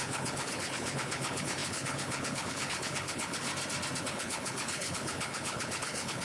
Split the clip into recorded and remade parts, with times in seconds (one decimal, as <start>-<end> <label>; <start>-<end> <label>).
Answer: 0.0-3.5 remade; 3.5-4.0 recorded; 4.0-6.2 remade